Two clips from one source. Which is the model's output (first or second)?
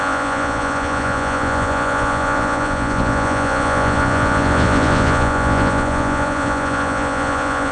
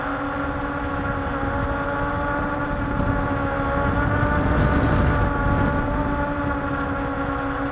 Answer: first